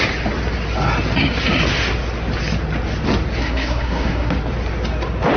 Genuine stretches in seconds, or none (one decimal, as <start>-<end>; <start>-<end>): 0.0-3.4; 4.3-5.4

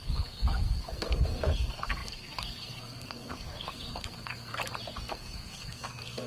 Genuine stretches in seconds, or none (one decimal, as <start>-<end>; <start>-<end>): 4.5-5.1

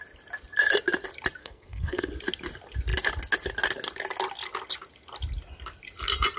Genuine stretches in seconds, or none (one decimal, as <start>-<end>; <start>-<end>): 0.0-1.4; 2.1-6.4